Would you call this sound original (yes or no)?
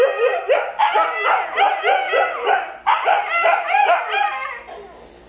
yes